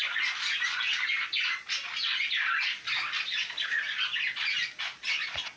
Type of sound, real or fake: real